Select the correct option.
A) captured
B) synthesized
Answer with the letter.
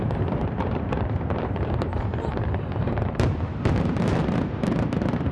B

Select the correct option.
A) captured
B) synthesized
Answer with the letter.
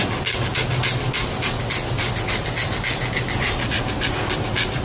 A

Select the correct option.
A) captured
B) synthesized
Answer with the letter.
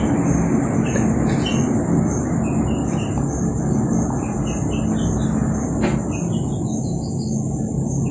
A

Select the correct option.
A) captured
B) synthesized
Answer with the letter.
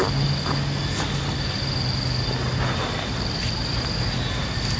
A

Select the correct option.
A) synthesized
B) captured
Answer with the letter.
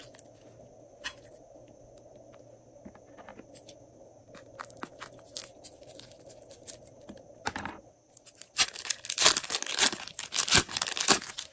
B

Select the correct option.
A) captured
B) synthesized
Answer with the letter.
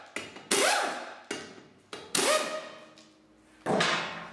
A